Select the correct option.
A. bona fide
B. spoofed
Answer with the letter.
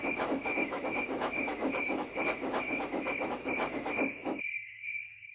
B